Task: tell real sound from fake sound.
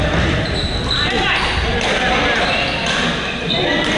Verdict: real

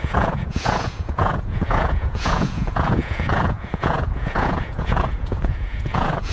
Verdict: fake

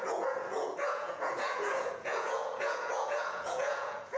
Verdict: fake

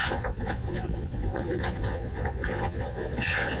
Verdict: fake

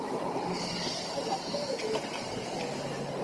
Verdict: real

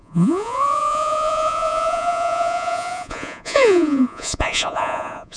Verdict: fake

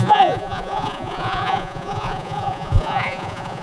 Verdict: fake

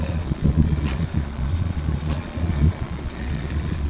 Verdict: fake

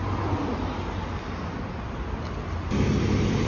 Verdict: real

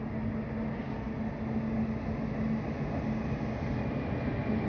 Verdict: real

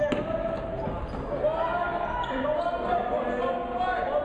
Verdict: real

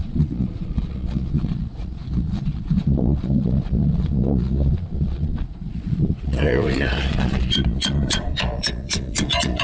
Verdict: fake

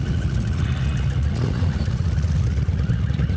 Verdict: fake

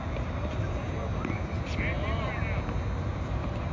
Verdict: real